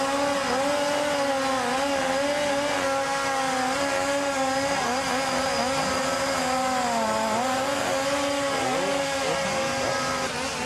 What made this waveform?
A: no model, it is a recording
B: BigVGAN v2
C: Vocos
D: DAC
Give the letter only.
A